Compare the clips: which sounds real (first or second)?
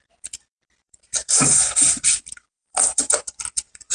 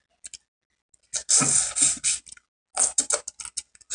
second